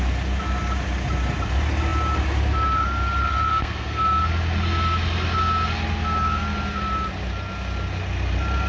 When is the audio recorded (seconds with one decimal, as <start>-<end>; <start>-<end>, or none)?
0.0-3.5; 4.2-8.7